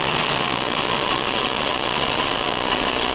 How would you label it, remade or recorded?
remade